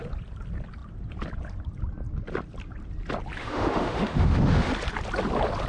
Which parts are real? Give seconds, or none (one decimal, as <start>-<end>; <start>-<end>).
0.0-3.4; 4.7-5.7

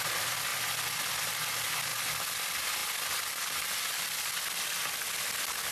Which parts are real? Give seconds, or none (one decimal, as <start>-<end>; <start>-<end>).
0.0-5.7

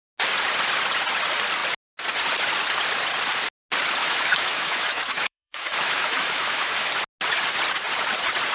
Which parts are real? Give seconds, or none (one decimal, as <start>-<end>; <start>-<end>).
0.0-4.0; 6.9-8.5

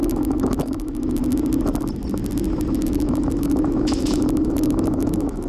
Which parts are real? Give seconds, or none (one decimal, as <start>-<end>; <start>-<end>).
1.2-2.7